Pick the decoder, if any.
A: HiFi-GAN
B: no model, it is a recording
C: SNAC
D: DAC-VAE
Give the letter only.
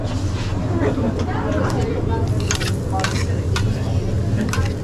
B